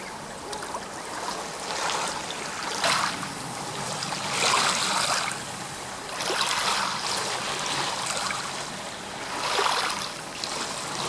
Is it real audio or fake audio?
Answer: real